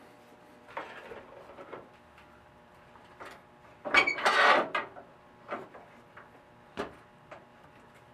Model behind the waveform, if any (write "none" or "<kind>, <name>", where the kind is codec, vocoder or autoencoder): none